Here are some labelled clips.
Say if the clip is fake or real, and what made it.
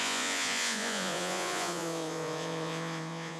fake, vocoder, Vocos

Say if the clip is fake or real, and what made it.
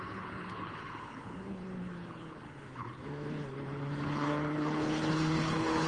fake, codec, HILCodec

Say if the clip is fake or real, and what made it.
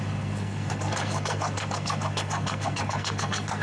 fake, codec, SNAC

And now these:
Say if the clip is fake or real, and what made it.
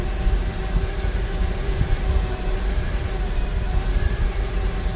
fake, vocoder, BigVGAN v2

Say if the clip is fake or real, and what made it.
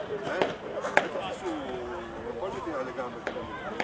real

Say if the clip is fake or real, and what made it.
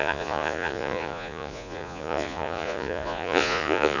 fake, vocoder, Vocos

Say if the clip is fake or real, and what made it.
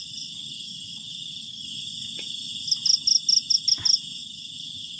real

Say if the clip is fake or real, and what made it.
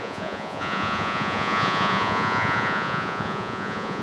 fake, vocoder, Vocos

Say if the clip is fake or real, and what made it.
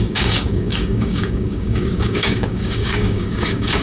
fake, codec, DAC